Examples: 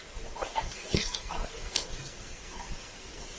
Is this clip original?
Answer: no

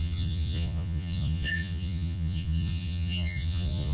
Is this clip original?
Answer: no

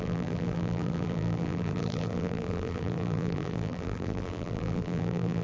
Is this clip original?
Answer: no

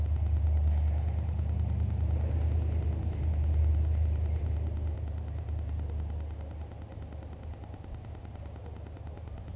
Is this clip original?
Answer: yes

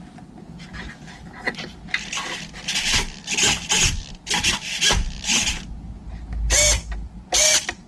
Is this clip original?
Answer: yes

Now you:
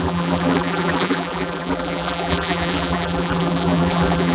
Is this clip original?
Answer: no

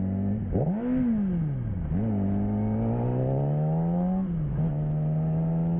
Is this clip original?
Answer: yes